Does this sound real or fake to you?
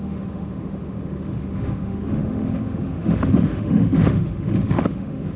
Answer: fake